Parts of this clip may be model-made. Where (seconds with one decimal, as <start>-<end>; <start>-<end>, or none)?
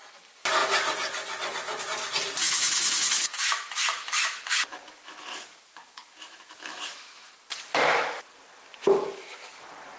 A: 2.4-7.3